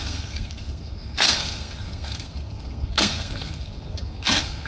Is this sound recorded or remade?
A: remade